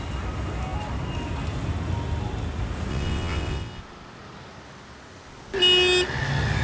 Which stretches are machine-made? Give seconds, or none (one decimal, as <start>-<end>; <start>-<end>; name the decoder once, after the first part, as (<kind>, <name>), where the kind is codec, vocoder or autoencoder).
2.9-3.8 (vocoder, WaveNeXt)